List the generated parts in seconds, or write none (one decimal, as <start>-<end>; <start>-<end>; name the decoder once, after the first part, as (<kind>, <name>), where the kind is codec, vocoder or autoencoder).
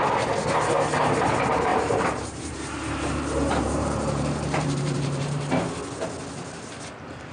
1.7-5.7 (vocoder, BigVGAN v2)